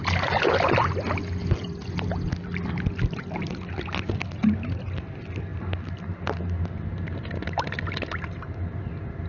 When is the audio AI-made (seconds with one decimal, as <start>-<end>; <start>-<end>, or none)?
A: none